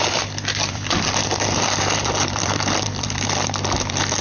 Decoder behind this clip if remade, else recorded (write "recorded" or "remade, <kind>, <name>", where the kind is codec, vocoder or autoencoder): remade, vocoder, BigVGAN v2